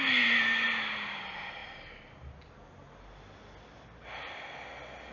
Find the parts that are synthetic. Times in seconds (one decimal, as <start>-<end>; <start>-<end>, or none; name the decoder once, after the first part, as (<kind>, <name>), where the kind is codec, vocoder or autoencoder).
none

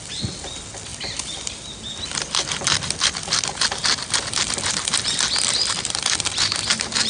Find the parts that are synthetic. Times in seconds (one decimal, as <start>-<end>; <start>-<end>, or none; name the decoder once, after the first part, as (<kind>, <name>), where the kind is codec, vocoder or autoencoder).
none

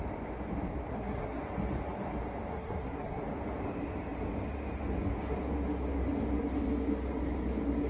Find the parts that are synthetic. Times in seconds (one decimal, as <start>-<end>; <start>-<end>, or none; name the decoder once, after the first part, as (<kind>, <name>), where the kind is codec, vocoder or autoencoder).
0.9-1.4 (codec, SNAC); 2.5-3.2

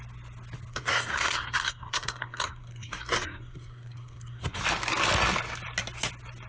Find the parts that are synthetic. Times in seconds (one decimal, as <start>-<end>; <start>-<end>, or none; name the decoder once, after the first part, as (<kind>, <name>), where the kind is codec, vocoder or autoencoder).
0.7-4.6 (codec, SNAC)